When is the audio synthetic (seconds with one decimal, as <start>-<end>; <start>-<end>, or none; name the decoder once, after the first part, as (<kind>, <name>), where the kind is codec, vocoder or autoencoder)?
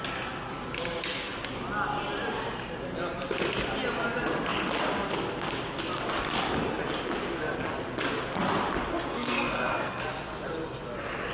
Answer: 9.1-10.1 (codec, SNAC)